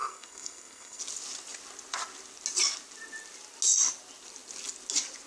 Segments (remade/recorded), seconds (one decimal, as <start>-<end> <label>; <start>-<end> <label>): 0.0-1.0 remade; 1.0-5.3 recorded